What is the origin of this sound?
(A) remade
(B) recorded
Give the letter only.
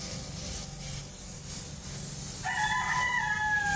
B